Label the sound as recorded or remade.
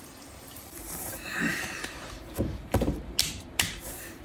remade